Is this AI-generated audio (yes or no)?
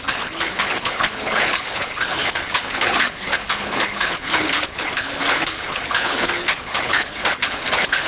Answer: yes